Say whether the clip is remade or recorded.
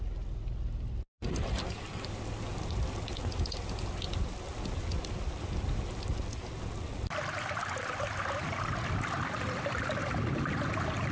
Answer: recorded